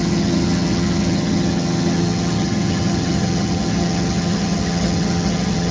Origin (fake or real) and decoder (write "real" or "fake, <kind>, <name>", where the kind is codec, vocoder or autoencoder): fake, vocoder, HiFi-GAN